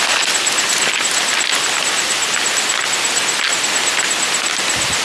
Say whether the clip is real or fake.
real